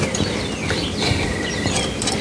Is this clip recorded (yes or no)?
yes